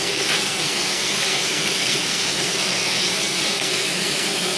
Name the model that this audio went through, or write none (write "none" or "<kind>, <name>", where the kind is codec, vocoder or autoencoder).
codec, SNAC